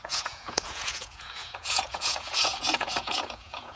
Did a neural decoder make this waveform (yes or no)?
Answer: yes